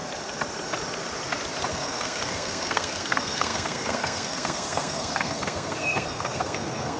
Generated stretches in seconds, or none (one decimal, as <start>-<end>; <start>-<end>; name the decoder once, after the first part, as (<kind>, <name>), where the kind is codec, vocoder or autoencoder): 1.7-7.0 (codec, SNAC)